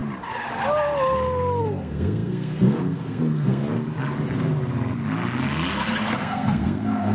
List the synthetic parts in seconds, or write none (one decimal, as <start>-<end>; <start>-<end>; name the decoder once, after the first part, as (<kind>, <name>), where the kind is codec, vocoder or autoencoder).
1.6-3.6 (codec, SNAC); 6.2-7.1